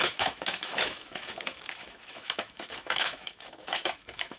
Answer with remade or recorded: remade